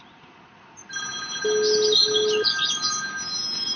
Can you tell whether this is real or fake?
real